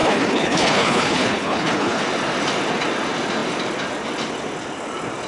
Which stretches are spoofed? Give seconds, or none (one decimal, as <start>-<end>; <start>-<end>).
0.0-2.0